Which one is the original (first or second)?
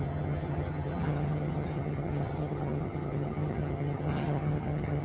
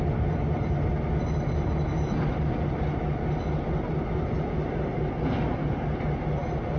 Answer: second